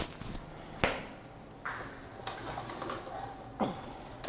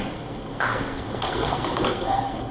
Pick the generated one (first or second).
second